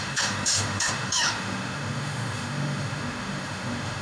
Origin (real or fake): fake